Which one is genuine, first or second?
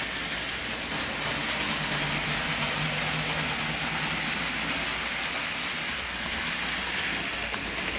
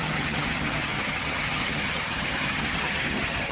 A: first